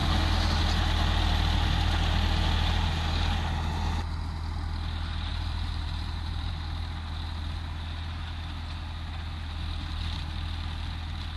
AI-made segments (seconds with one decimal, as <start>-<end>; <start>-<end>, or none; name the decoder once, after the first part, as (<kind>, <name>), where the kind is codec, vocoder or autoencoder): 5.3-6.5 (vocoder, BigVGAN v2)